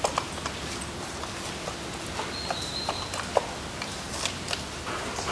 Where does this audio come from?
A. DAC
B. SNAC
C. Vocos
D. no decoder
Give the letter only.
D